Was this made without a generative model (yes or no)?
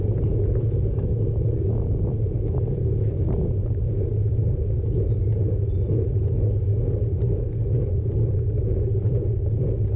no